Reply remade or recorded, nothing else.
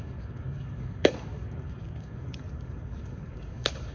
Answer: remade